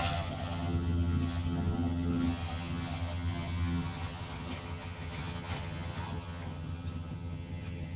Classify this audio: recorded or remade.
remade